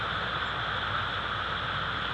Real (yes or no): yes